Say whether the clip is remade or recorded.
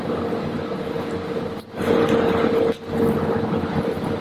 recorded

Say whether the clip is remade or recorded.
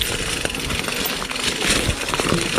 recorded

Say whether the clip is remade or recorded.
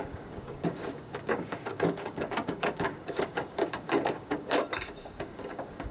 remade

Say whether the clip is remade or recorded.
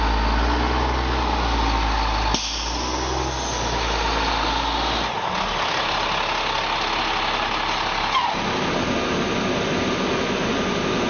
recorded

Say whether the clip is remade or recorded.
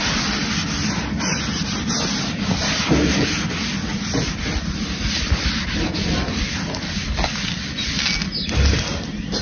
recorded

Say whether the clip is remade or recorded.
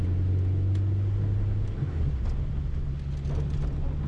recorded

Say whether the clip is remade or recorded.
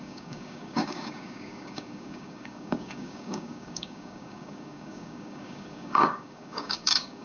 remade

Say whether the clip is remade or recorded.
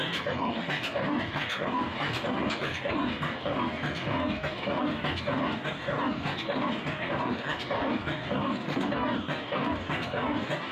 remade